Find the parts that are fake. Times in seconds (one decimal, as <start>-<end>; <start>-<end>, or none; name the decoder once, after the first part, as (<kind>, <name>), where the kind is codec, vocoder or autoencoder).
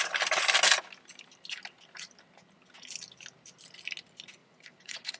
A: 4.4-5.2 (vocoder, Vocos)